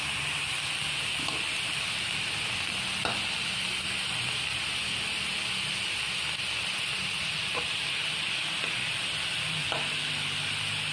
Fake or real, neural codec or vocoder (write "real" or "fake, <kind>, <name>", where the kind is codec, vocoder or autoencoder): real